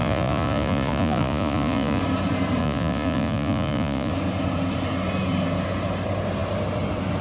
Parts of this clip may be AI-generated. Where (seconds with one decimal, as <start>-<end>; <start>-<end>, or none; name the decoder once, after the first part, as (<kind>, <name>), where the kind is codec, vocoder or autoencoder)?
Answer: 0.0-2.0 (vocoder, Vocos); 2.6-4.1